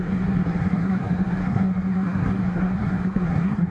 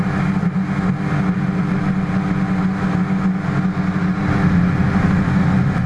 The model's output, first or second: first